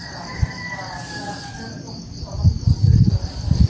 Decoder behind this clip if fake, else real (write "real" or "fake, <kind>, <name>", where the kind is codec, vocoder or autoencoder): real